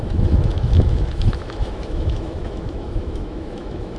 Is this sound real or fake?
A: fake